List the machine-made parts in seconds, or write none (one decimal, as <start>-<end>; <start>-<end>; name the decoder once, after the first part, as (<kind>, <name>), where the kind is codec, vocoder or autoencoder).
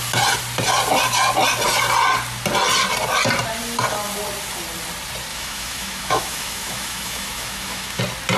5.3-8.0 (autoencoder, DAC-VAE)